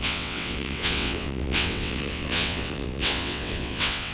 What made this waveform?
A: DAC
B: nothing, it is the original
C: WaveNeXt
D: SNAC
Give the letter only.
C